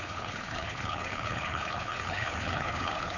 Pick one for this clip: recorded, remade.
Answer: remade